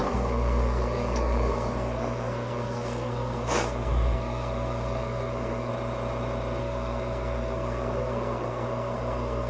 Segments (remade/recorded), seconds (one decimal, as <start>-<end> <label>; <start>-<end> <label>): 0.0-5.7 remade; 5.7-6.6 recorded; 6.6-9.5 remade